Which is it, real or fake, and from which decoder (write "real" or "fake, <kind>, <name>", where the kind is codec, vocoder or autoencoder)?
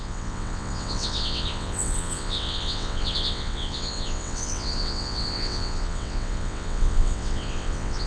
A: fake, vocoder, WaveNeXt